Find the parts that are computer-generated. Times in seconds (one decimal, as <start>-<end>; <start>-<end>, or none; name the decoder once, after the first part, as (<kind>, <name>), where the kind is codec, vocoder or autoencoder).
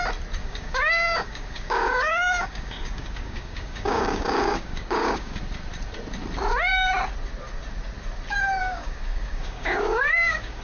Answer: 0.4-5.4 (codec, DAC); 8.6-10.6